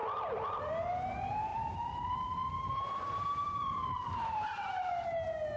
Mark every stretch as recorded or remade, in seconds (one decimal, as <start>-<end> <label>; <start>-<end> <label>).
0.0-1.5 recorded; 1.5-4.9 remade; 4.9-5.6 recorded